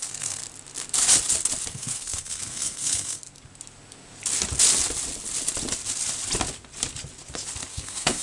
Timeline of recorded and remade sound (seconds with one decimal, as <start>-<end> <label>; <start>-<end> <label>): 0.0-0.4 remade; 0.4-1.7 recorded; 1.7-3.2 remade; 3.2-7.7 recorded; 7.7-8.2 remade